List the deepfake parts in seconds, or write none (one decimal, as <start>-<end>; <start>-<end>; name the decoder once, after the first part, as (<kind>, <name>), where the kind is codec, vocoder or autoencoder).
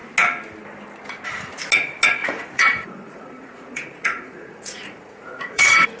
2.2-6.0 (vocoder, Vocos)